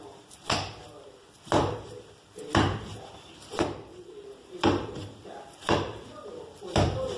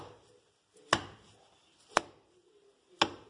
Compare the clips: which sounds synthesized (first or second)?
first